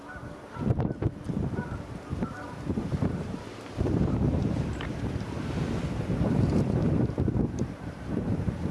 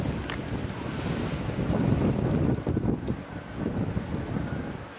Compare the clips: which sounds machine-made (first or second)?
first